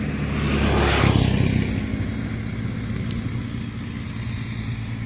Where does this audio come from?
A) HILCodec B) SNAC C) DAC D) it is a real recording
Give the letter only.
D